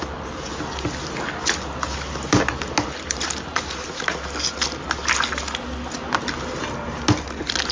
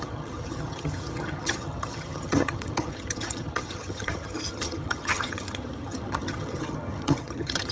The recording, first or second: first